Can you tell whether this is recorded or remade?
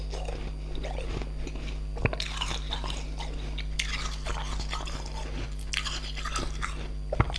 recorded